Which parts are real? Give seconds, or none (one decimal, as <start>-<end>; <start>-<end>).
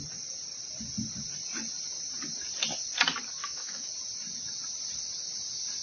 0.0-3.4; 3.9-5.8